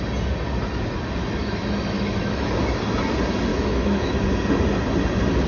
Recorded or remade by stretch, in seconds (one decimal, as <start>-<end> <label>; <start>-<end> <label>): 0.0-1.2 recorded; 1.2-2.5 remade; 2.5-3.5 recorded; 3.5-4.2 remade; 4.2-5.5 recorded